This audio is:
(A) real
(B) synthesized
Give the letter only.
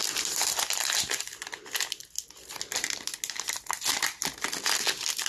A